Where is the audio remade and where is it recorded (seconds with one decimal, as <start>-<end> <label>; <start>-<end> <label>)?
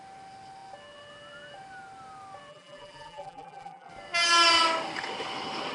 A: 0.0-2.5 recorded; 2.5-3.9 remade; 3.9-5.7 recorded